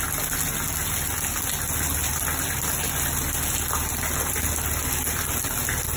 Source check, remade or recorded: recorded